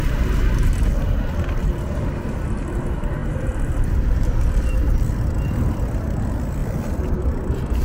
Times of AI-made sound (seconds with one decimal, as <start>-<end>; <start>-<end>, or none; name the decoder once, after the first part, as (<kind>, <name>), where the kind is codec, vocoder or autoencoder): 3.2-5.1 (vocoder, BigVGAN v2); 6.6-7.2